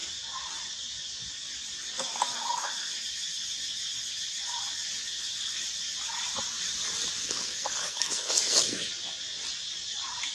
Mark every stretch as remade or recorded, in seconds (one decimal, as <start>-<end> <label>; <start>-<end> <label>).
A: 0.0-7.2 recorded; 7.2-8.9 remade; 8.9-10.3 recorded